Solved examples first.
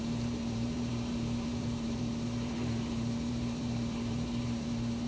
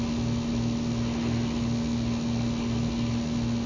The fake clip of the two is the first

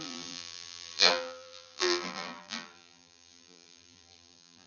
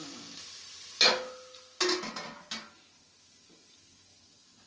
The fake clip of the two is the first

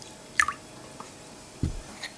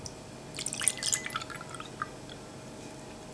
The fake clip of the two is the first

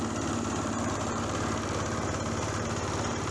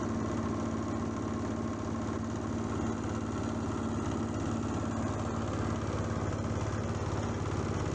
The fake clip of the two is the first